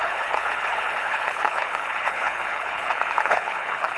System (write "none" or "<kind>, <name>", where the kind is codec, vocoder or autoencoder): codec, HILCodec